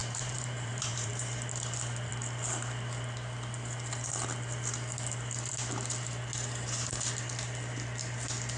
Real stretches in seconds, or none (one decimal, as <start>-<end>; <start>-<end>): 1.1-8.6